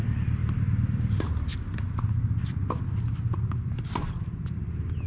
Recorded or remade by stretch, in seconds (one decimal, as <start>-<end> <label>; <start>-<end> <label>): 0.0-5.1 recorded